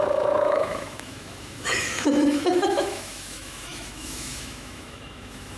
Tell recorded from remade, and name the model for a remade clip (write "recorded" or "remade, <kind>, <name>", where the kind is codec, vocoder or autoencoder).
remade, autoencoder, DAC-VAE